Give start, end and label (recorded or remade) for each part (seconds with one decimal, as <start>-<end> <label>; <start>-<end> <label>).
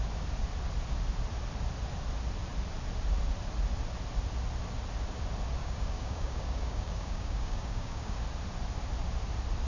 0.0-5.6 recorded; 5.6-8.2 remade; 8.2-9.7 recorded